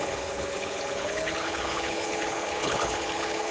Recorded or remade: remade